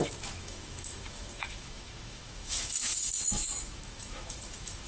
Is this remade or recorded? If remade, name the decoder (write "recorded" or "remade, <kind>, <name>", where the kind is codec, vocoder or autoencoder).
remade, autoencoder, DAC-VAE